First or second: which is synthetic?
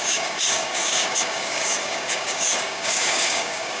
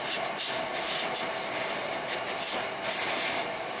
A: first